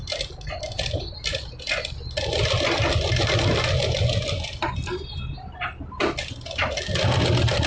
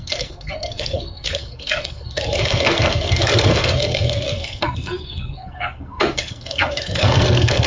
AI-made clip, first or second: second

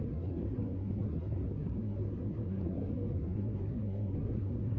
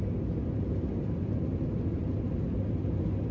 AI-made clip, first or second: first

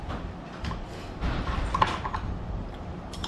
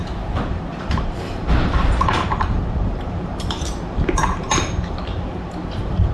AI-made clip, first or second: second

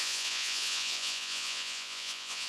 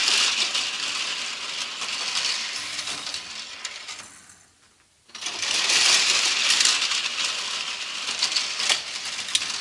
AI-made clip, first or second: first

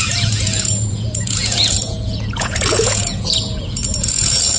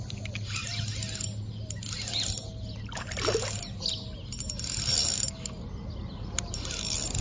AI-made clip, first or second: first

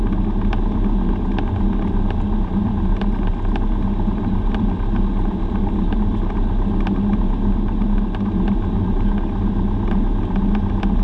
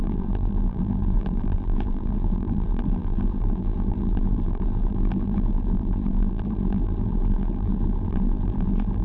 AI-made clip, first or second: second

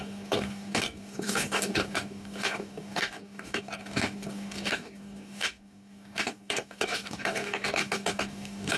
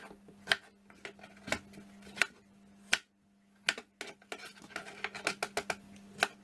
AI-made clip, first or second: first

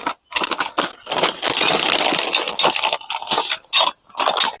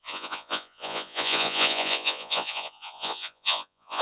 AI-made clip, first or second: second